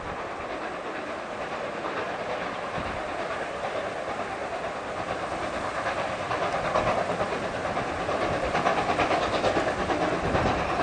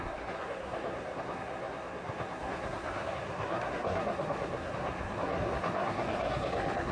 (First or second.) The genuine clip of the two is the first